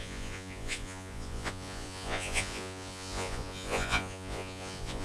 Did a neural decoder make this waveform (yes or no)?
yes